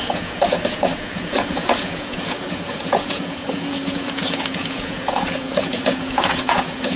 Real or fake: fake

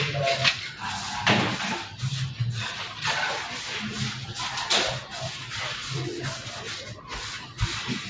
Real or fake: real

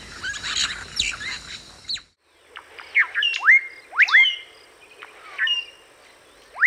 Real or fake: real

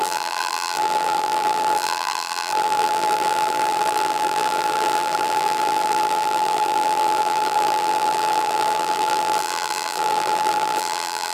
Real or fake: fake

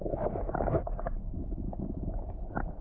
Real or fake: real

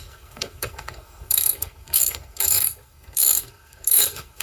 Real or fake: fake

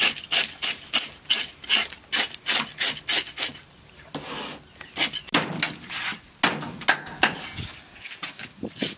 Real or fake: real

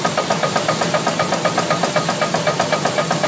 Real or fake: real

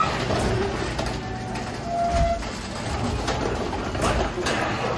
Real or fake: real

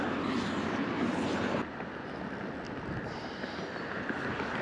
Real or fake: real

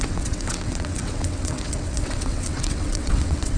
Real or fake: fake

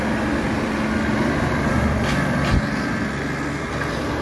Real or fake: real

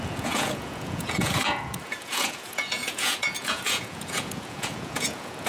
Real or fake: fake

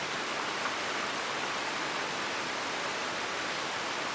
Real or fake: fake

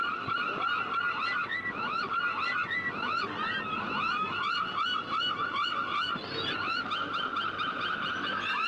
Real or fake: real